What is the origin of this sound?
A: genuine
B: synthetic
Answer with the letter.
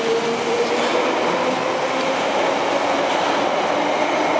A